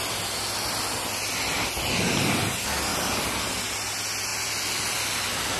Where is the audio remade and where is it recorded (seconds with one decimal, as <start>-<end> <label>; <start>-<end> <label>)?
0.0-4.3 recorded; 4.3-5.6 remade